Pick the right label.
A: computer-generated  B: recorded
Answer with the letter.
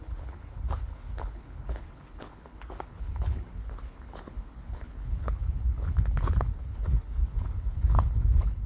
A